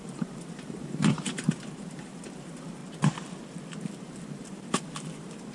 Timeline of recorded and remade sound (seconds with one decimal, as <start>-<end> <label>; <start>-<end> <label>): 0.0-2.8 remade; 2.8-3.8 recorded; 3.8-5.5 remade